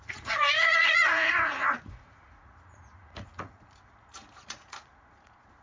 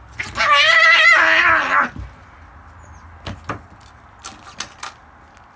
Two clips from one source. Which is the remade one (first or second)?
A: first